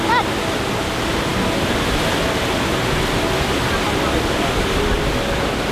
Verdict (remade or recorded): recorded